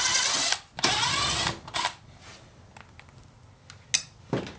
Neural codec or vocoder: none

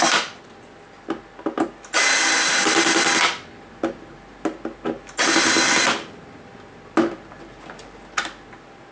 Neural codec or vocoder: none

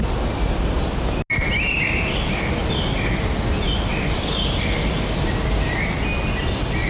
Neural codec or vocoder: none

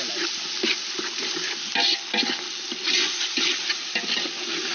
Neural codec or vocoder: none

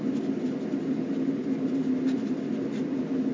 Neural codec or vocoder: none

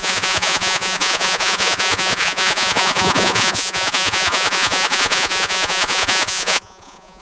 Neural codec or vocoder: vocoder, Vocos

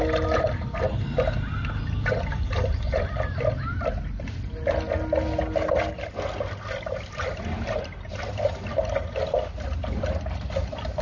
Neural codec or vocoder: none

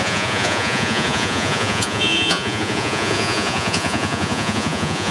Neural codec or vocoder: vocoder, Vocos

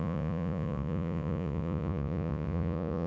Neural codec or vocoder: vocoder, Vocos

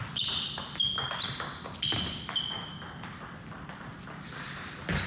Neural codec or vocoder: none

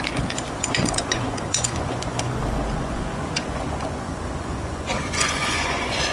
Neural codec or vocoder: vocoder, Vocos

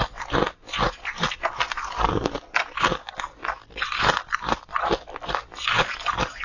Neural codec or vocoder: none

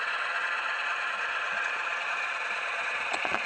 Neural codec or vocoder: vocoder, Vocos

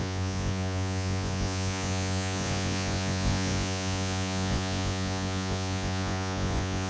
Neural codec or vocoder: vocoder, Vocos